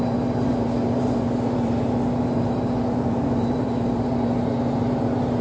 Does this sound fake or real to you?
fake